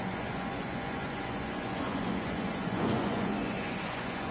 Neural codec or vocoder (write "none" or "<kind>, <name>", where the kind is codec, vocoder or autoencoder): vocoder, Vocos